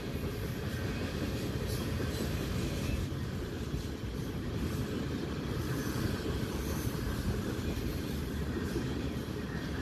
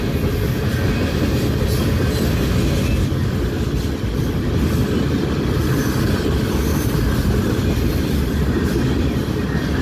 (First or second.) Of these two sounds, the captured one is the second